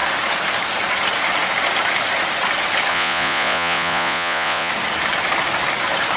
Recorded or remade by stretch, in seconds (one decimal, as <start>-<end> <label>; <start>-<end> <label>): 0.0-2.9 recorded; 2.9-4.7 remade; 4.7-6.2 recorded